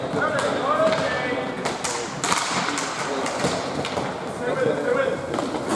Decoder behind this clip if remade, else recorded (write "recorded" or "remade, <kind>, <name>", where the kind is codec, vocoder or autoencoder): recorded